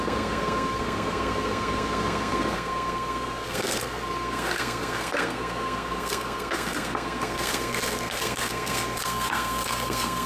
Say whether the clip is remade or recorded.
remade